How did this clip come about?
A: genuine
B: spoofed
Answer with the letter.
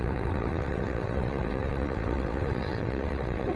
B